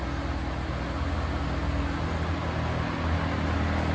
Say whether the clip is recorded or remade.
recorded